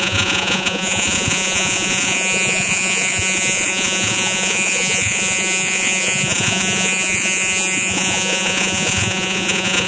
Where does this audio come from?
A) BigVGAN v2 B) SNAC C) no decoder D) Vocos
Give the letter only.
D